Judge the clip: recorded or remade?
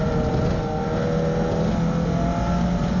recorded